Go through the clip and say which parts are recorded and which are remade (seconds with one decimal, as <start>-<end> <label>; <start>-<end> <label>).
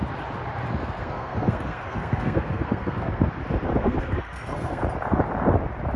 0.0-0.8 recorded; 0.8-3.3 remade; 3.3-3.8 recorded; 3.8-4.8 remade; 4.8-6.0 recorded